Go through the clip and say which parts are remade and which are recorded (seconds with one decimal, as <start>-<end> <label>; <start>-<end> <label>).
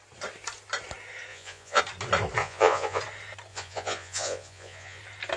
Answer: 0.0-1.3 recorded; 1.3-1.8 remade; 1.8-2.4 recorded; 2.4-3.0 remade; 3.0-3.5 recorded; 3.5-5.0 remade; 5.0-5.4 recorded